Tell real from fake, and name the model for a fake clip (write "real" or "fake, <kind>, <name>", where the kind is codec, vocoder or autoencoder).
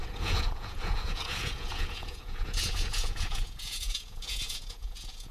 fake, vocoder, Vocos